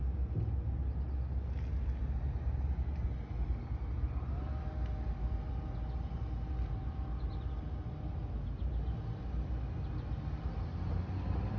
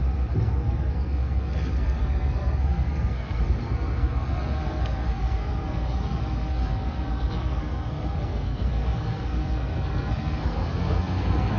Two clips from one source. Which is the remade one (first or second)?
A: second